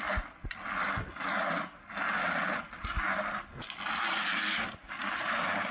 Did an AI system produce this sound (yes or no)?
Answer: no